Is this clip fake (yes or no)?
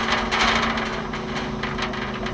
no